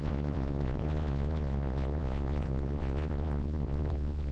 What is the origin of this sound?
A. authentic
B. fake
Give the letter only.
B